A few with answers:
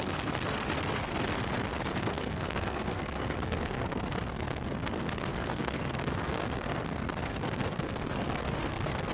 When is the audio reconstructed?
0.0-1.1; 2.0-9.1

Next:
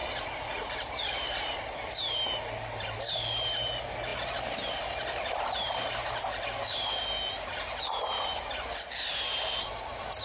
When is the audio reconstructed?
0.0-1.6

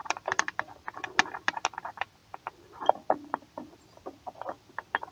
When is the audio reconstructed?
0.0-0.7

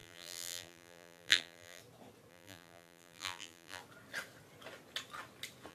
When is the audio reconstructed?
0.0-1.8; 2.3-3.8